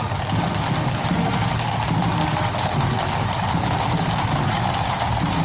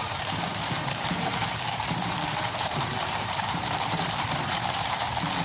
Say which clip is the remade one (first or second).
second